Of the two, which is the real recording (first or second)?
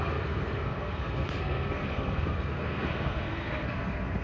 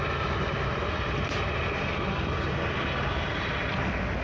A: second